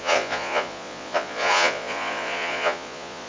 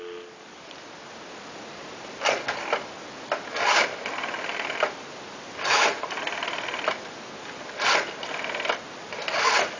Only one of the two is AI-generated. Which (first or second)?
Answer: first